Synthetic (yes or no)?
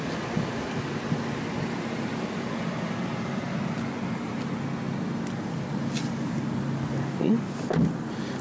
no